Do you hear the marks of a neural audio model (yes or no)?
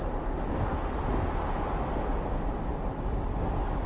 no